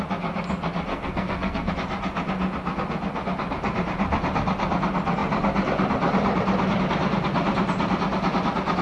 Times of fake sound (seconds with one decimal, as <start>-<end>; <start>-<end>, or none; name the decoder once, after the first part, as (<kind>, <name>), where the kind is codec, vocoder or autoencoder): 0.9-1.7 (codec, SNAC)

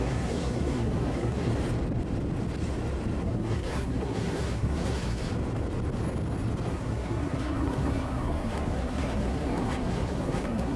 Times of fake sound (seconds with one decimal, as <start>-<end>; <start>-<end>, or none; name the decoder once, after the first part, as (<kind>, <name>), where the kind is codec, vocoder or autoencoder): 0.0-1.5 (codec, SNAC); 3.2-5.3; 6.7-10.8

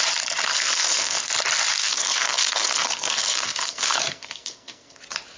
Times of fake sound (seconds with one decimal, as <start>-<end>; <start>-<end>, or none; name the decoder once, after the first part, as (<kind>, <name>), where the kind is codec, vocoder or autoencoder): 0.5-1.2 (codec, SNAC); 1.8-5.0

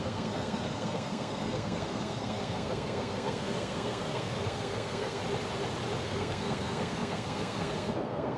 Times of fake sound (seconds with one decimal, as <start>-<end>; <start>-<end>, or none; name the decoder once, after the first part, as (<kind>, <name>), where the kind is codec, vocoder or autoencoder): 0.0-5.2 (codec, SNAC); 6.0-8.4

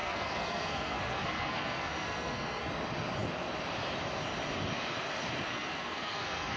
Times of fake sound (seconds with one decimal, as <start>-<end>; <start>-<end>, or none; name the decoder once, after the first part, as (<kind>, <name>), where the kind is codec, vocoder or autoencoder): 0.0-2.7 (codec, SNAC); 5.5-6.6

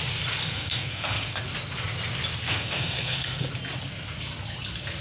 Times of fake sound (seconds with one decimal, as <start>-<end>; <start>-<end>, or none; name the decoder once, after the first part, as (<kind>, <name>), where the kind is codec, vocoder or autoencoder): 0.4-1.4 (codec, SNAC); 2.4-3.5

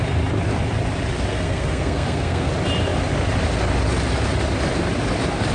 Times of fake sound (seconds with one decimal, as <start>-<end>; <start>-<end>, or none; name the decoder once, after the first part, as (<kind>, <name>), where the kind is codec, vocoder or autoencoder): 1.3-2.5 (codec, SNAC)